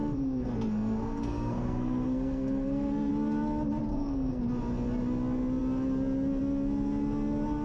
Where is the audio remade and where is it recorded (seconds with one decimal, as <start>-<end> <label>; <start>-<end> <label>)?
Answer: 0.0-3.1 remade; 3.1-3.9 recorded; 3.9-4.4 remade; 4.4-7.6 recorded